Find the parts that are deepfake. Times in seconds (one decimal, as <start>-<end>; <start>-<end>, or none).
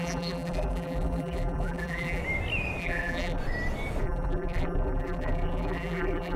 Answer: 0.0-2.2; 2.8-3.4; 4.0-6.4